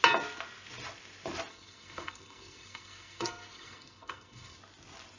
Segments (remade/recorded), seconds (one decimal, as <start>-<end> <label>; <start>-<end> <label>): 0.0-1.5 recorded; 1.5-4.6 remade; 4.6-5.2 recorded